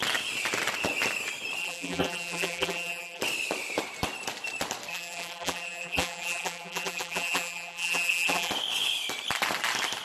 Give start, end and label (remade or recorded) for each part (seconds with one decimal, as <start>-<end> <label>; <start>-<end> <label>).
0.0-1.6 recorded; 1.6-3.2 remade; 3.2-4.9 recorded; 4.9-8.5 remade; 8.5-10.0 recorded